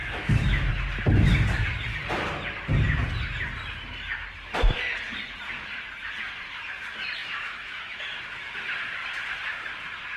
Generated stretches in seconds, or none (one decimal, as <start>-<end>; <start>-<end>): 0.0-0.7; 7.2-8.2